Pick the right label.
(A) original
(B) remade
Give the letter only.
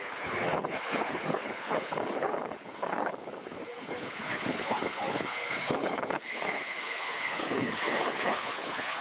B